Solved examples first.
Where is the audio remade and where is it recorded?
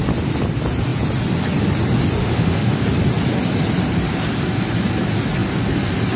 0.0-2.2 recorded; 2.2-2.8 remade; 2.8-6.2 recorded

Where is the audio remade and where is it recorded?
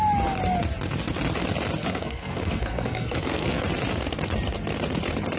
0.0-1.8 recorded; 1.8-3.6 remade; 3.6-5.4 recorded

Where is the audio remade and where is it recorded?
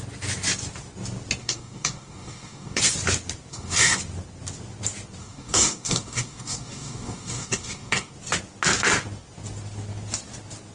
0.0-1.4 recorded; 1.4-2.8 remade; 2.8-3.5 recorded; 3.5-4.0 remade; 4.0-5.2 recorded; 5.2-8.1 remade; 8.1-10.7 recorded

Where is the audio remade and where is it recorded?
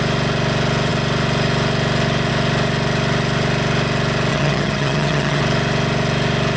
0.0-4.3 recorded; 4.3-5.4 remade; 5.4-6.6 recorded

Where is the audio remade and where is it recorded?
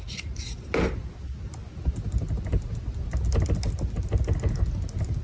0.0-5.2 recorded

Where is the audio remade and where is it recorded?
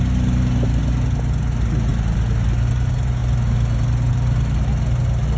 0.0-5.4 recorded